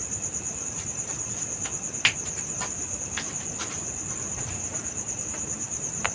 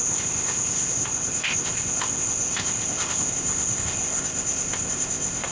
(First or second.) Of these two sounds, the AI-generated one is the second